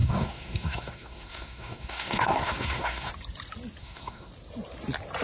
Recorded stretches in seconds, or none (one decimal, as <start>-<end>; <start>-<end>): 3.1-3.8; 4.3-5.2